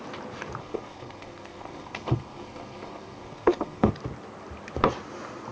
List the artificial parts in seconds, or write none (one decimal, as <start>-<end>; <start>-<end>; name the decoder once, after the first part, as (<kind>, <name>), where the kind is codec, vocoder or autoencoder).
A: 0.6-3.9 (codec, SNAC)